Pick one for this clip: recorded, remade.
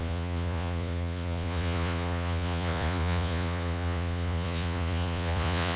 remade